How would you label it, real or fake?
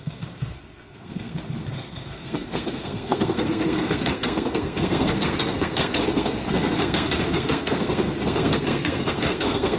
fake